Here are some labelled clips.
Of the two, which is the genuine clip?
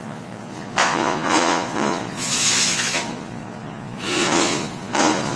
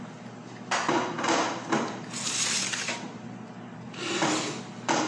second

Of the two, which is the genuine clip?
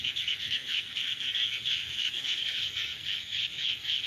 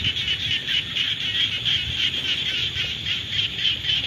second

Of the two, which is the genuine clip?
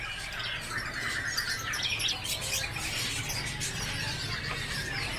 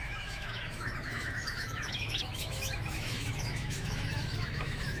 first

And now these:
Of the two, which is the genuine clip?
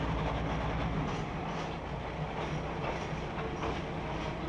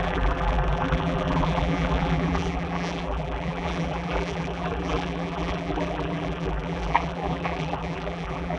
first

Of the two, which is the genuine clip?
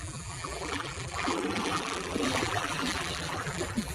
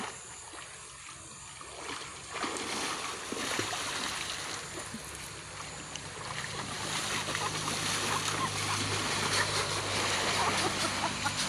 second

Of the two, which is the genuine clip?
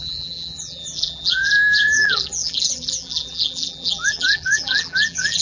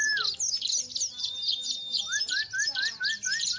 second